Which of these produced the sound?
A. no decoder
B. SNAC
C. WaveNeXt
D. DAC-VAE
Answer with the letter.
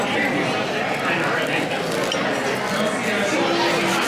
A